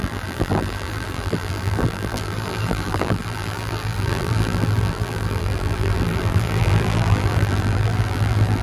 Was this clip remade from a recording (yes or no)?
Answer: yes